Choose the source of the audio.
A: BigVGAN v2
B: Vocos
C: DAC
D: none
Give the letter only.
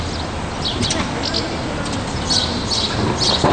D